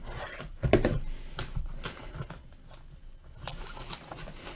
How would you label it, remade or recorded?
recorded